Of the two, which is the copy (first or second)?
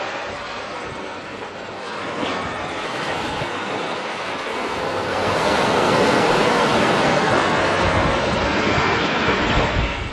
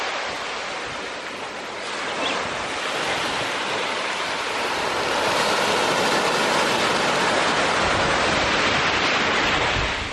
first